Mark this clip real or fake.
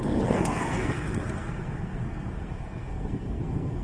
fake